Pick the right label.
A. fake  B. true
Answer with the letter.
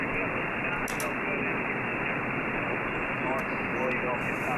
B